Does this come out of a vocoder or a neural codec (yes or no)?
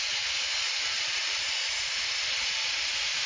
no